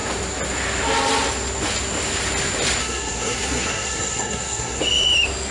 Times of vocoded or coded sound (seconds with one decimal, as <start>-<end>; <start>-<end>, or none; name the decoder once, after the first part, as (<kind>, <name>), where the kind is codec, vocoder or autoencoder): 2.8-4.8 (codec, SNAC)